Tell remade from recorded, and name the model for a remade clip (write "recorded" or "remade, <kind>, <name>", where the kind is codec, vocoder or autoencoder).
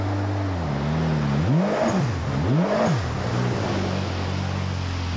recorded